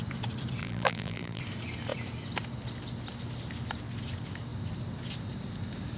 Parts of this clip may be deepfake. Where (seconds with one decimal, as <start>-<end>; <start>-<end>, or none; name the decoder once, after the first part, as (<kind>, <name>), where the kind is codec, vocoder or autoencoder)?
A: 0.6-1.4 (vocoder, BigVGAN v2)